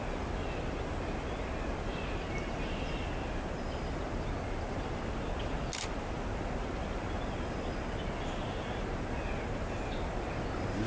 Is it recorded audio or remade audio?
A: recorded